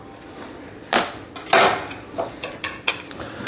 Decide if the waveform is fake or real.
real